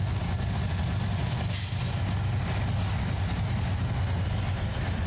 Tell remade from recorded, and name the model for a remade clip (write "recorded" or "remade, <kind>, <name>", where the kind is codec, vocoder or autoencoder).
recorded